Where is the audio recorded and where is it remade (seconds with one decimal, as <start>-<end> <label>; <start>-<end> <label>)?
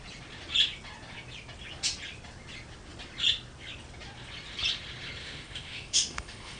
0.0-5.2 recorded; 5.2-6.6 remade